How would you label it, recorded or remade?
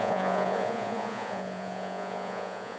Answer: remade